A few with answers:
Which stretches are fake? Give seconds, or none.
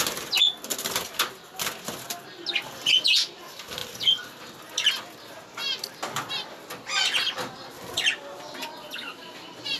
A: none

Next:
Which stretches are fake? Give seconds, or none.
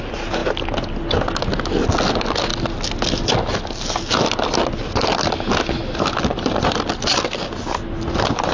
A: none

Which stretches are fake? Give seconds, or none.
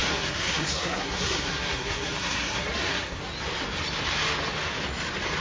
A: 0.0-3.2 (codec, SNAC)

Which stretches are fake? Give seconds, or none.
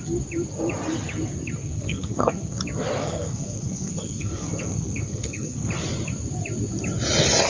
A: 1.6-2.6 (codec, SNAC); 3.0-5.7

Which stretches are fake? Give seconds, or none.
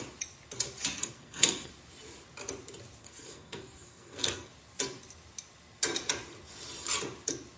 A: 1.0-1.7 (codec, SNAC); 3.0-4.5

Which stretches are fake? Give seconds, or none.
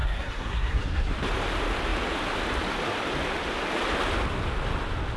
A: 0.0-1.1 (codec, SNAC)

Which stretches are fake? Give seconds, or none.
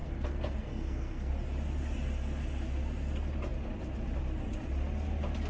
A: 0.0-1.3 (codec, SNAC)